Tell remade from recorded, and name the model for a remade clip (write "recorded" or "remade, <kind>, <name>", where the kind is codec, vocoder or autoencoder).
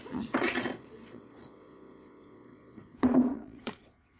remade, vocoder, Vocos